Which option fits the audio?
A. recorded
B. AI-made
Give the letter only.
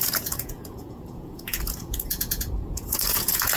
B